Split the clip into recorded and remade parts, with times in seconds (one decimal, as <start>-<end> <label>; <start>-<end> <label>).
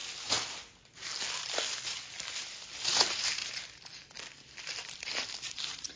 0.0-2.8 recorded; 2.8-3.4 remade; 3.4-3.9 recorded; 3.9-6.0 remade